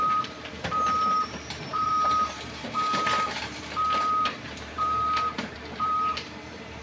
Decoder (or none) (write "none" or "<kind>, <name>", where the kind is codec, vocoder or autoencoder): vocoder, BigVGAN v2